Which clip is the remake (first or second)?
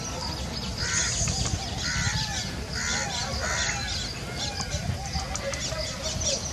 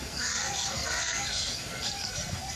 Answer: second